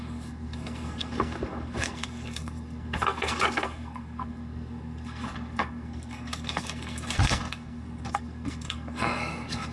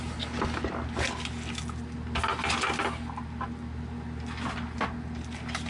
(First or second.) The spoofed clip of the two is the first